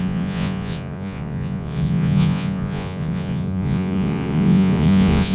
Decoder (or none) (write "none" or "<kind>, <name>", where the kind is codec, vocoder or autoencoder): vocoder, Vocos